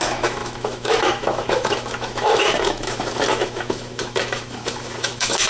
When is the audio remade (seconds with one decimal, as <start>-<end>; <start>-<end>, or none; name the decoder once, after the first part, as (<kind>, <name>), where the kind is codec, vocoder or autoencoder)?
0.0-5.5 (autoencoder, DAC-VAE)